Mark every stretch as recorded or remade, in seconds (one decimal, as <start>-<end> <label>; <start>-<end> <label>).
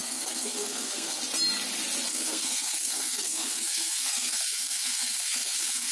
0.0-1.2 remade; 1.2-2.1 recorded; 2.1-5.9 remade